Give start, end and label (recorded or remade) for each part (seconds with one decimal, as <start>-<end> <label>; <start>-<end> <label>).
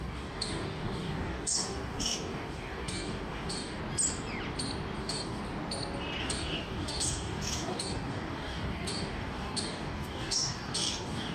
0.0-3.8 remade; 3.8-5.0 recorded; 5.0-5.4 remade; 5.4-6.2 recorded; 6.2-11.3 remade